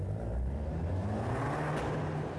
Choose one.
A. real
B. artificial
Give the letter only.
A